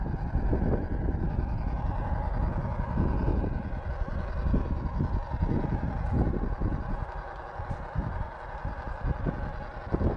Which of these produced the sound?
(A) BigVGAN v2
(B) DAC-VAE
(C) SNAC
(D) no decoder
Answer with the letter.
D